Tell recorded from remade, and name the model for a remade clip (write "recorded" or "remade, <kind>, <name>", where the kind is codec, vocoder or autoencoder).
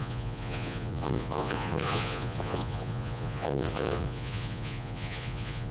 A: remade, vocoder, Vocos